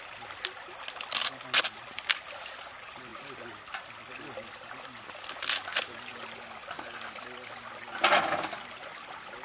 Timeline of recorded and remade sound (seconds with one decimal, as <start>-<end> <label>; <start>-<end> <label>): 0.0-9.4 recorded